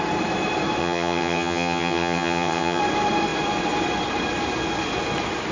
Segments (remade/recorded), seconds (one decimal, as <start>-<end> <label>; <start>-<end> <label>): 0.0-0.8 recorded; 0.8-2.8 remade; 2.8-5.5 recorded